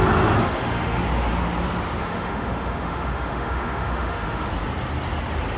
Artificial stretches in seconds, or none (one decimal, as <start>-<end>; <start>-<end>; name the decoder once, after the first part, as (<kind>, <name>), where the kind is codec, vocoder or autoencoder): 0.4-1.0 (autoencoder, DAC-VAE); 2.0-4.5

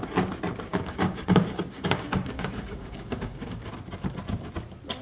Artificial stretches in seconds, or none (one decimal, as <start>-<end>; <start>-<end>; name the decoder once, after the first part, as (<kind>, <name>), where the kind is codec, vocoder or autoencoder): 0.7-3.7 (codec, DAC)

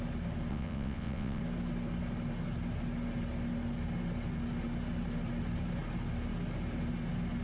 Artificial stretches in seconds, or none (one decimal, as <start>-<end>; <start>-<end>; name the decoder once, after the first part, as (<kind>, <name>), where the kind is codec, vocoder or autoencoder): 0.5-1.4 (vocoder, WaveNeXt)

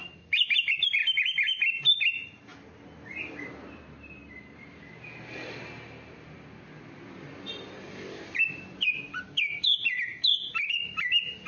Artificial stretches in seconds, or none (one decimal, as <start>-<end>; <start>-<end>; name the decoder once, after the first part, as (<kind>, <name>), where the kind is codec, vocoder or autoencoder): 0.0-1.0 (vocoder, BigVGAN v2); 1.8-2.5; 3.7-4.2; 9.1-11.5

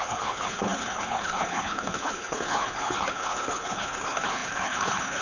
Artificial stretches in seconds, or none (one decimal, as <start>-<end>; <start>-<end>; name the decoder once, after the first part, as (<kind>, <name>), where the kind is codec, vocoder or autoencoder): 0.0-5.2 (codec, HILCodec)

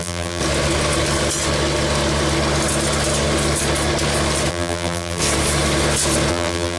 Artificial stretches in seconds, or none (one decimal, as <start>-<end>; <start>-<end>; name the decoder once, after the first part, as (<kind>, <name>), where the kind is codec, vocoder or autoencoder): 0.0-0.4 (vocoder, BigVGAN v2); 4.5-5.2; 6.3-6.8

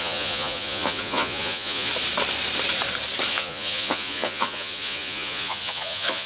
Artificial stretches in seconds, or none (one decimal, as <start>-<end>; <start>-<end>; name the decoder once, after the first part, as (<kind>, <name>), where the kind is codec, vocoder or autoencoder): 0.0-1.9 (vocoder, Vocos); 3.3-6.3